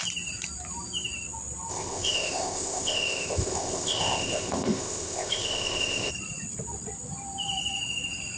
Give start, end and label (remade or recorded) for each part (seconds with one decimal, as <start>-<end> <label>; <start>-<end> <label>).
0.0-1.7 recorded; 1.7-6.1 remade; 6.1-8.4 recorded

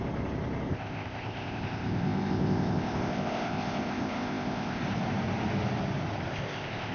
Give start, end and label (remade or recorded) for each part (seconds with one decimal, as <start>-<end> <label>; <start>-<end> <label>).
0.0-0.7 recorded; 0.7-4.8 remade; 4.8-6.3 recorded; 6.3-6.9 remade

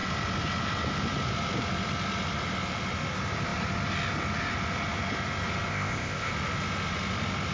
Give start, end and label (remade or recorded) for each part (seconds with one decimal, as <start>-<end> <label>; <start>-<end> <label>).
0.0-5.7 recorded; 5.7-6.3 remade; 6.3-7.5 recorded

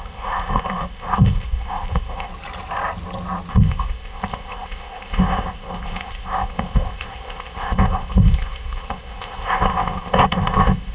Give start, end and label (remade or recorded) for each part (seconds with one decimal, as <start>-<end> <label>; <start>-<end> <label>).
0.0-2.3 remade; 2.3-3.5 recorded; 3.5-10.9 remade

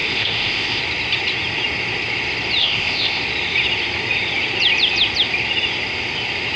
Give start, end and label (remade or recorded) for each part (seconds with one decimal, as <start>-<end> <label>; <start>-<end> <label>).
0.0-0.8 remade; 0.8-2.6 recorded; 2.6-3.2 remade; 3.2-6.6 recorded

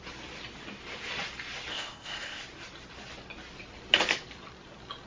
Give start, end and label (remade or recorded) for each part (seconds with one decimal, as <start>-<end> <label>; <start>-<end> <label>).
0.0-1.7 recorded; 1.7-2.4 remade; 2.4-5.1 recorded

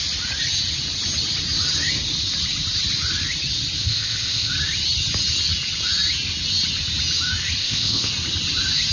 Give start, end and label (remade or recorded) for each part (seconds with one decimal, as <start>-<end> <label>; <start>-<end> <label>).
0.0-3.8 recorded; 3.8-4.5 remade; 4.5-7.6 recorded; 7.6-8.1 remade; 8.1-8.9 recorded